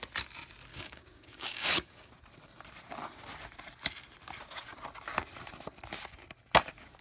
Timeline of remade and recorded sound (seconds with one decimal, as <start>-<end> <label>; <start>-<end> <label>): 0.0-0.7 recorded; 0.7-2.1 remade; 2.1-7.0 recorded